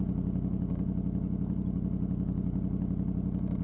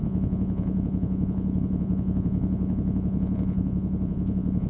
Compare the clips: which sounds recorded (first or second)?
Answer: first